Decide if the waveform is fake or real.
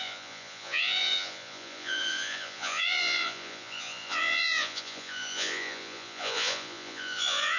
fake